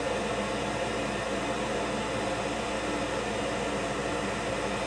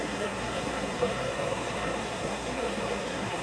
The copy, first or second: second